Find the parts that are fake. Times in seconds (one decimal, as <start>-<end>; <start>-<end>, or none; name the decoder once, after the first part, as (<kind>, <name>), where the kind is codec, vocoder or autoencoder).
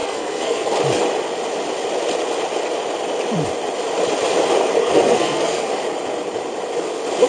0.0-0.7 (codec, SNAC); 4.8-5.7